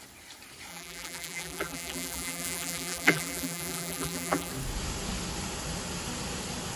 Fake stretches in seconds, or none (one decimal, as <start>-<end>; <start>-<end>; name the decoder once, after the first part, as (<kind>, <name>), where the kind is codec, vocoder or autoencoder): 0.7-4.5 (vocoder, BigVGAN v2)